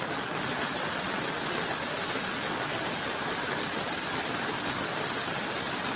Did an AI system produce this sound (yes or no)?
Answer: no